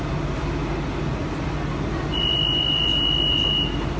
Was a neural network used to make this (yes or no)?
no